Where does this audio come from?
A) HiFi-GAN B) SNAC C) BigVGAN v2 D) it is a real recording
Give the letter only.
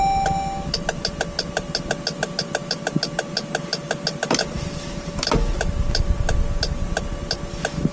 D